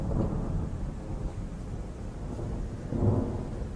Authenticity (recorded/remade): recorded